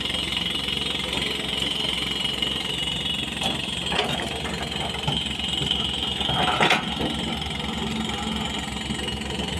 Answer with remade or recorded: recorded